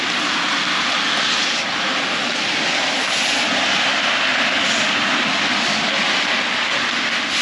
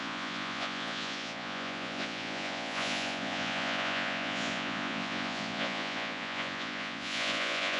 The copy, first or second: second